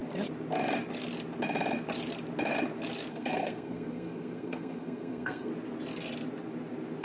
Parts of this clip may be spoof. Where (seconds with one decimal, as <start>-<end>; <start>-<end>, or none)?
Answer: 3.1-5.5